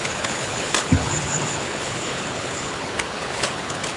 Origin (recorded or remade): remade